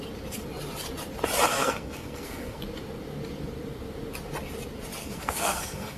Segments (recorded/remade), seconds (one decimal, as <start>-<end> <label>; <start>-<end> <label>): 0.0-1.5 recorded; 1.5-2.6 remade; 2.6-5.0 recorded; 5.0-6.0 remade